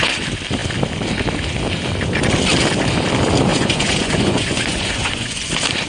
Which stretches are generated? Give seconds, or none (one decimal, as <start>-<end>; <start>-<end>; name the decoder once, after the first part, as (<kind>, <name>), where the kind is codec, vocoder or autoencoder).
3.5-5.5 (vocoder, Vocos)